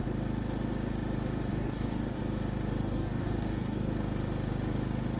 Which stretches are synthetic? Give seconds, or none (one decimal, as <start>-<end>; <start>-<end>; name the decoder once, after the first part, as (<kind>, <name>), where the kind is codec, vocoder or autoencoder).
1.5-2.2 (codec, DAC); 2.8-3.9